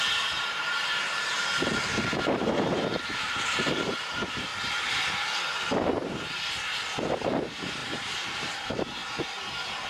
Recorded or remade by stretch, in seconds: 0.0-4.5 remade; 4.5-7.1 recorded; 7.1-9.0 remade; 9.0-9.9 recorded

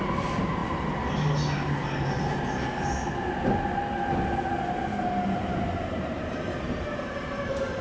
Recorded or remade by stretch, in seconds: 0.0-0.6 remade; 0.6-5.1 recorded; 5.1-7.8 remade